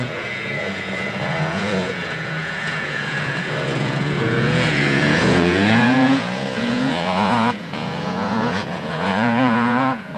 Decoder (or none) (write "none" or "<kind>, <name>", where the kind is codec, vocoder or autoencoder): vocoder, Vocos